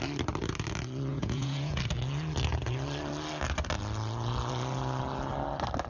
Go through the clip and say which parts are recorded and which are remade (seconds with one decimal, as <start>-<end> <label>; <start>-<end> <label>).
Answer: 0.0-1.1 recorded; 1.1-1.8 remade; 1.8-5.9 recorded